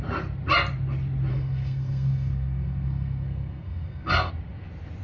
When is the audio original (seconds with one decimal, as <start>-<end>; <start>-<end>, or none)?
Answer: 0.0-1.3; 4.3-5.0